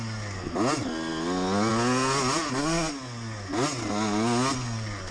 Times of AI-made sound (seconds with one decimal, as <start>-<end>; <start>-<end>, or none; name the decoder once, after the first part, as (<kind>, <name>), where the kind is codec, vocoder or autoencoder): none

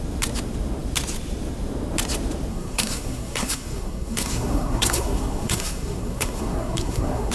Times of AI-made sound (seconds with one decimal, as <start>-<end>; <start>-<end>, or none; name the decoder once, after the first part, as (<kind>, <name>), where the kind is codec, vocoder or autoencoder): 2.5-7.3 (codec, SNAC)

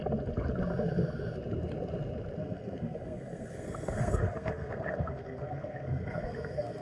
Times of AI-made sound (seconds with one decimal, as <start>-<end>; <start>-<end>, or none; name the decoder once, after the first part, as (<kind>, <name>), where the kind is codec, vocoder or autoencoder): 2.4-6.8 (codec, SNAC)

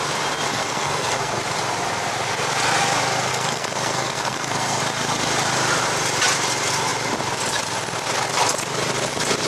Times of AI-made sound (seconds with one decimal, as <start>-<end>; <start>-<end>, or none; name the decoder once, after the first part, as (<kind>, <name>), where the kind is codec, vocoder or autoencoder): 0.5-1.4 (codec, SNAC); 3.3-4.8

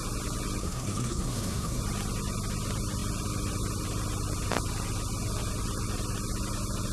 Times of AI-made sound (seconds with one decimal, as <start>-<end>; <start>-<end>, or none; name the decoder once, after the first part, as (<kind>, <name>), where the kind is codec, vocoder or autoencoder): 0.6-1.8 (codec, SNAC)

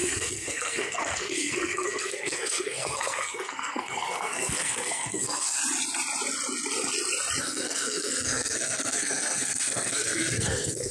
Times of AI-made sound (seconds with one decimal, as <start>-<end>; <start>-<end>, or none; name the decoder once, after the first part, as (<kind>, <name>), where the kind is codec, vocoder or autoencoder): 0.0-5.6 (codec, SNAC); 7.4-10.9